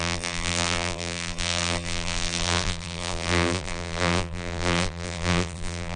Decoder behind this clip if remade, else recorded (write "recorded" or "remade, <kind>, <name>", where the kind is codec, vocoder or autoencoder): remade, vocoder, BigVGAN v2